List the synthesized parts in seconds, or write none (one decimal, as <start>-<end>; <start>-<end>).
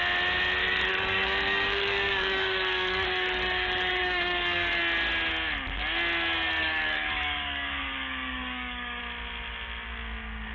0.6-4.8; 6.6-9.0